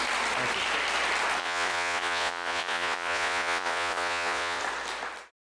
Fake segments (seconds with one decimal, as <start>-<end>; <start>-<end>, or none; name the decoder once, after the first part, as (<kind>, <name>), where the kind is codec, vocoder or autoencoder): 1.4-4.6 (vocoder, Vocos)